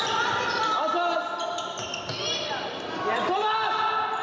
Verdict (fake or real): real